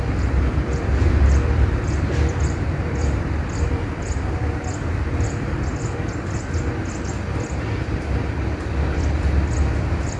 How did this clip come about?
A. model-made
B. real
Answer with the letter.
A